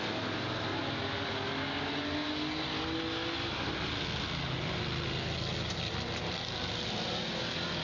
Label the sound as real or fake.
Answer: real